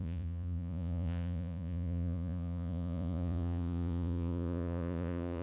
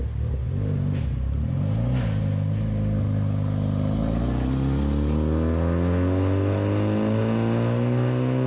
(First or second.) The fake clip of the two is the first